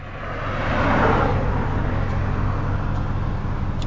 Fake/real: real